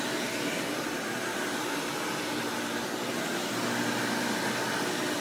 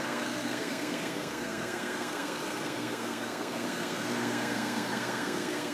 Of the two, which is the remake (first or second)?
second